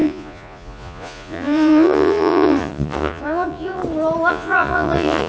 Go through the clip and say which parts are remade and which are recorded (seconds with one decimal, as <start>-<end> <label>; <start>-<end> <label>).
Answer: 0.0-3.8 remade; 3.8-4.3 recorded; 4.3-5.3 remade